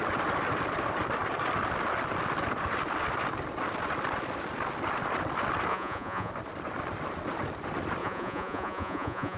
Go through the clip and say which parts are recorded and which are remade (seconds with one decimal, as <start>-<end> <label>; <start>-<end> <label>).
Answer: 0.0-5.7 recorded; 5.7-6.3 remade; 6.3-8.0 recorded; 8.0-9.4 remade